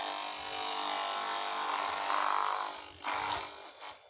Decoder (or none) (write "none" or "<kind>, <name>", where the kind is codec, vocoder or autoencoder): none